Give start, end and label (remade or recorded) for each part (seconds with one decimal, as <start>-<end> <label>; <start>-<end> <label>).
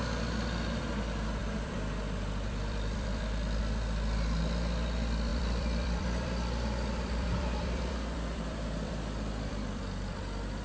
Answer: 0.0-1.4 recorded; 1.4-3.6 remade; 3.6-5.3 recorded; 5.3-10.6 remade